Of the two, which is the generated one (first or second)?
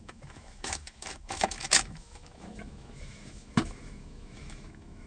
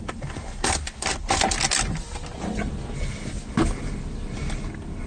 first